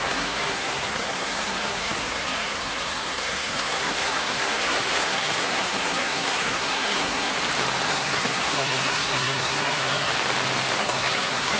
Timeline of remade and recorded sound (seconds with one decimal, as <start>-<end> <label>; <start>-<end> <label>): 0.0-7.3 remade; 7.3-7.9 recorded; 7.9-10.1 remade; 10.1-10.8 recorded; 10.8-11.6 remade